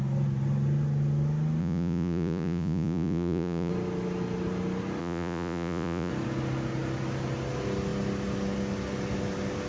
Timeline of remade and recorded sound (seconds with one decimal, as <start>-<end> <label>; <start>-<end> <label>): 0.0-1.6 recorded; 1.6-3.7 remade; 3.7-5.0 recorded; 5.0-6.1 remade; 6.1-9.7 recorded